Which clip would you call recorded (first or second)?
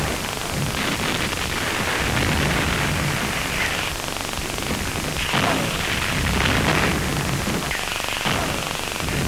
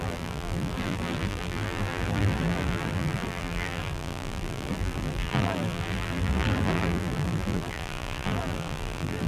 first